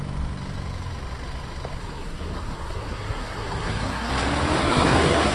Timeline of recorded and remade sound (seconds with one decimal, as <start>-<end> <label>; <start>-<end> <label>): 0.0-1.8 recorded; 1.8-4.1 remade; 4.1-4.6 recorded; 4.6-5.3 remade